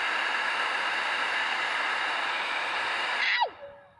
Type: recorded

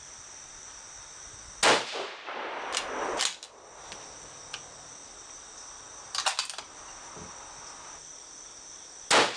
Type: recorded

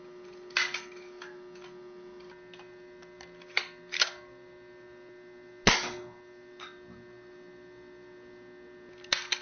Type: recorded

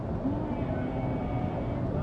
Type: recorded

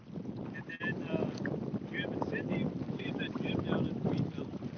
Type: recorded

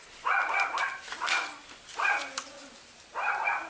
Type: recorded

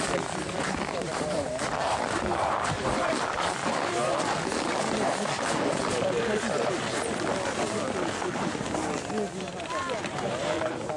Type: recorded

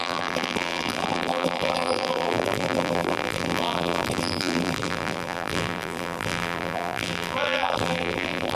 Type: remade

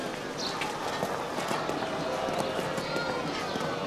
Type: recorded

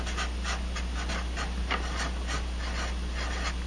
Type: recorded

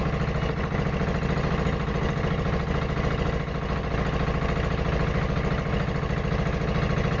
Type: recorded